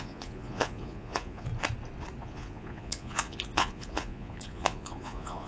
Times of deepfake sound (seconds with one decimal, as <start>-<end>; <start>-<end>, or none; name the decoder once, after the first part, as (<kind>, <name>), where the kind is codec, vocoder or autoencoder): 0.0-1.5 (vocoder, Vocos); 2.2-5.5